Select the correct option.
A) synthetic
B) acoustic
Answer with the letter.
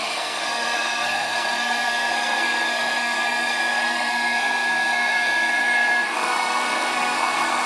A